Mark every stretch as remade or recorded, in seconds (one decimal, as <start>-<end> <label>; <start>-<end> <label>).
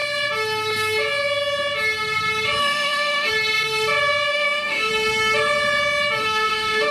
0.0-2.6 recorded; 2.6-3.3 remade; 3.3-4.3 recorded; 4.3-4.9 remade; 4.9-6.2 recorded; 6.2-6.9 remade